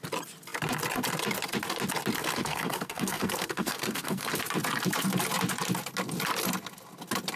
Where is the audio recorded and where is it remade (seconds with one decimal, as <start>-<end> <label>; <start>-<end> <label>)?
0.0-2.2 recorded; 2.2-4.4 remade; 4.4-7.4 recorded